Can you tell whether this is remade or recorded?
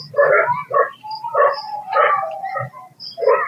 recorded